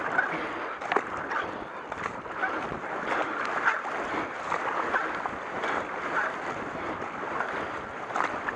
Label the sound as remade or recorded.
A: recorded